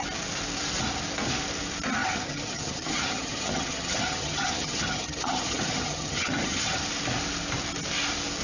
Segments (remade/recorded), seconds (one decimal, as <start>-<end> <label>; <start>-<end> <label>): 0.0-2.0 recorded; 2.0-6.8 remade; 6.8-8.4 recorded